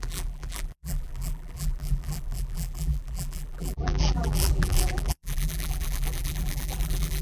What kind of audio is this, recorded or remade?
remade